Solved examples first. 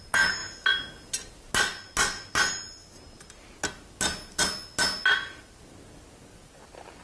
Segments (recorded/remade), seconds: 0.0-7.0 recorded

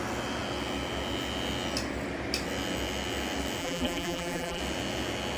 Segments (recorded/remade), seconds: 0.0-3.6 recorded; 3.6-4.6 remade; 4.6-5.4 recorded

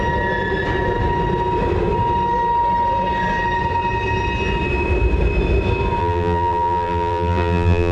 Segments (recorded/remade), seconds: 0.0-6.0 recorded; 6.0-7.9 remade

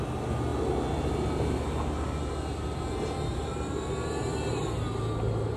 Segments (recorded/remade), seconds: 0.0-3.3 recorded; 3.3-3.9 remade; 3.9-5.6 recorded